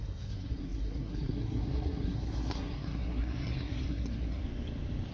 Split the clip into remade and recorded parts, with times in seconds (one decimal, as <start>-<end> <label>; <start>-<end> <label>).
0.0-4.4 remade; 4.4-5.1 recorded